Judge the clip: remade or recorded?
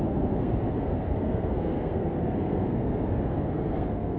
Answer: remade